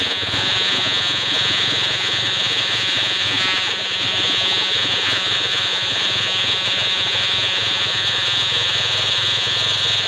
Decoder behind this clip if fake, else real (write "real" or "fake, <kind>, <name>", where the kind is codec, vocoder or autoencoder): fake, vocoder, Vocos